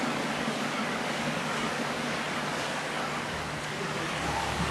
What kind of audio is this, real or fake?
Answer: fake